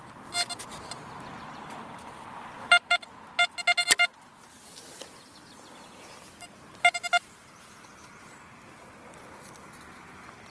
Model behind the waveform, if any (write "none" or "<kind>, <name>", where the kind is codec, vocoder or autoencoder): none